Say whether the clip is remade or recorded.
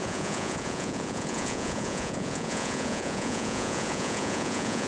remade